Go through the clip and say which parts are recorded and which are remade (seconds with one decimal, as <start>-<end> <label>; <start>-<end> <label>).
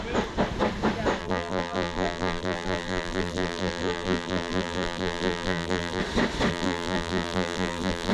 0.0-1.2 recorded; 1.2-6.0 remade; 6.0-6.5 recorded; 6.5-8.1 remade